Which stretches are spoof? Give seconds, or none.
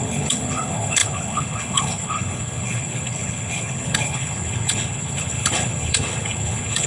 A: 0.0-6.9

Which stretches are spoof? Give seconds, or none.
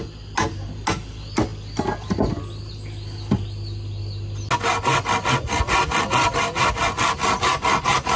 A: none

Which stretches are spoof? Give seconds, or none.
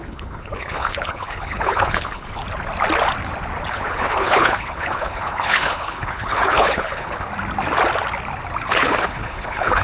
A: 0.0-2.4; 3.7-7.3; 8.7-9.8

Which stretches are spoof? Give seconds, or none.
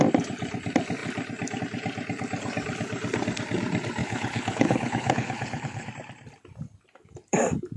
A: 4.0-5.9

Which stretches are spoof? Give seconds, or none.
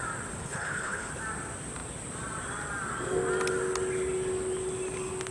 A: 0.4-1.1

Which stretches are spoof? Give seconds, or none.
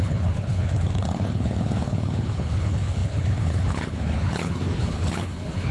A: 0.0-5.7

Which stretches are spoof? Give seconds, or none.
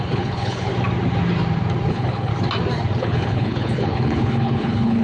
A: 0.0-0.7; 1.9-2.3; 3.0-5.0